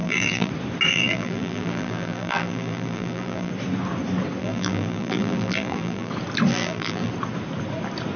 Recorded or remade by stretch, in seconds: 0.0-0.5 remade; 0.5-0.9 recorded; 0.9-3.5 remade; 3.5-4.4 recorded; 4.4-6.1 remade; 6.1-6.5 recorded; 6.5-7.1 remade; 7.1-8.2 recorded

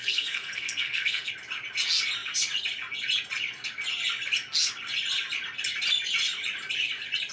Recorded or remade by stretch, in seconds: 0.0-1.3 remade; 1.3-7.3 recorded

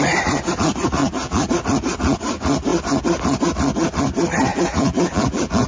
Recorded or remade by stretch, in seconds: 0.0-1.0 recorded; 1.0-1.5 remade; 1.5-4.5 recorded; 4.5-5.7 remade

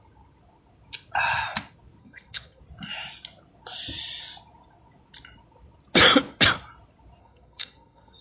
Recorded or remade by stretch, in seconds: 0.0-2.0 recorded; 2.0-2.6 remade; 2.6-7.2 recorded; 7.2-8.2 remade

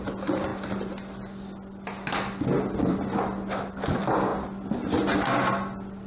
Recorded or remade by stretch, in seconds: 0.0-6.1 recorded